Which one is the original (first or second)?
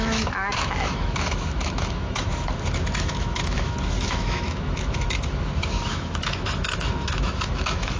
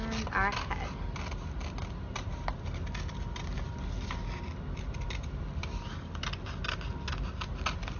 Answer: second